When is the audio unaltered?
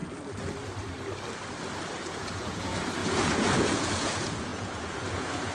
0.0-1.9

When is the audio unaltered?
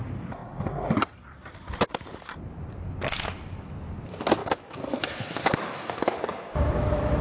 0.0-4.4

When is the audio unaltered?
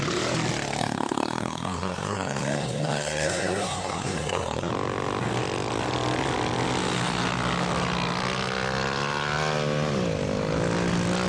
0.0-0.8; 4.7-11.3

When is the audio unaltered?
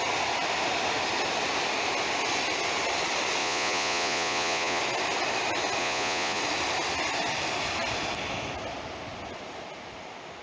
0.0-3.4; 4.8-5.8; 6.4-10.4